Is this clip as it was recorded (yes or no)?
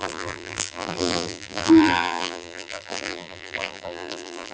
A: no